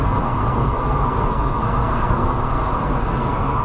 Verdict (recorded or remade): remade